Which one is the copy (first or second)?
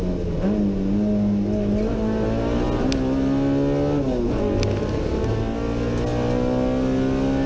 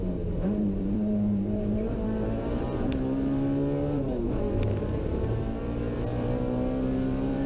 second